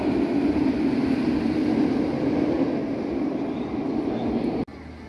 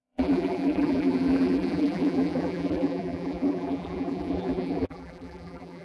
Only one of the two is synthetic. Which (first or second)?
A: second